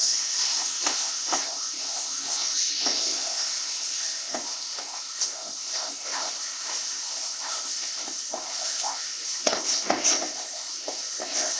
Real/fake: fake